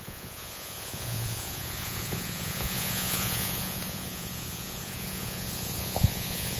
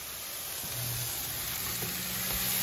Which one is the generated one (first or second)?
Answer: first